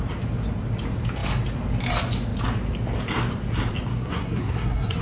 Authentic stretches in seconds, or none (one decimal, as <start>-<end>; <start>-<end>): 0.0-3.9